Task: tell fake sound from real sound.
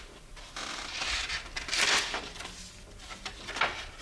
real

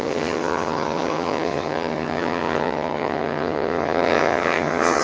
fake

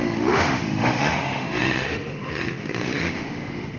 fake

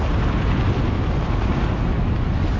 real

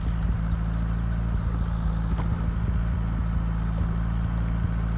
real